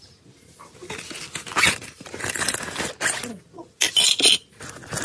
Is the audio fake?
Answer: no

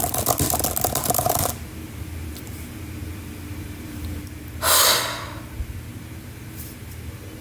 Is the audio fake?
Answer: no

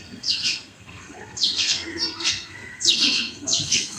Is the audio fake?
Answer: yes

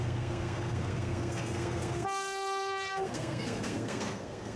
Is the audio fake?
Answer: yes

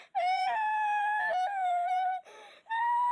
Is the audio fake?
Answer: yes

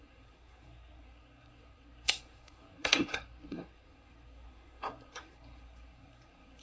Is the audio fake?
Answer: yes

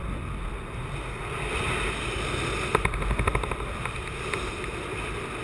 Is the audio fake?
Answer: no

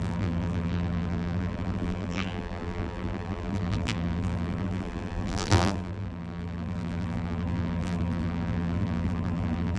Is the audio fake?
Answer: yes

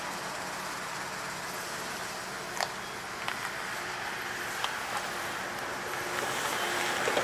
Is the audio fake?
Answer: no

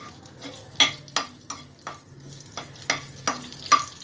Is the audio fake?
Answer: no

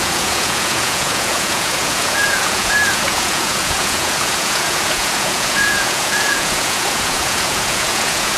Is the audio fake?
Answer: yes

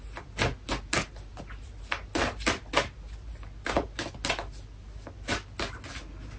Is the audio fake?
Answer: no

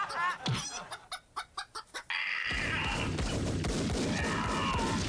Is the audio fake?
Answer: no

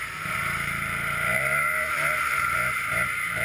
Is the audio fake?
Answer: yes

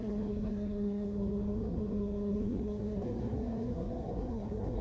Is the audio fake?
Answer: yes